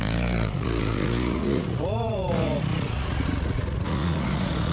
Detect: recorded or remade remade